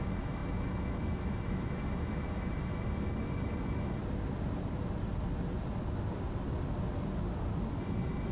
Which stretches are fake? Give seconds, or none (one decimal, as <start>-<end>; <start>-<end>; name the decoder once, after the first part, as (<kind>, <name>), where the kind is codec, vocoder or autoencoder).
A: 0.0-4.0 (autoencoder, DAC-VAE); 7.8-8.3